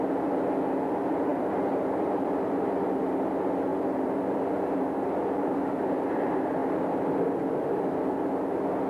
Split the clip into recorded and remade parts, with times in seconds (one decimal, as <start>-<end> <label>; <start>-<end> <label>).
0.0-1.3 recorded; 1.3-2.3 remade; 2.3-3.7 recorded; 3.7-6.0 remade; 6.0-6.6 recorded; 6.6-7.4 remade; 7.4-8.9 recorded